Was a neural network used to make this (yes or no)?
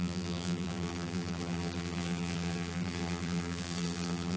yes